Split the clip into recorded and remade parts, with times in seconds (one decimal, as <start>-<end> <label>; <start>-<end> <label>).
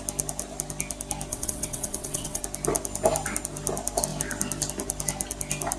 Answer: 0.0-1.3 recorded; 1.3-2.4 remade; 2.4-5.8 recorded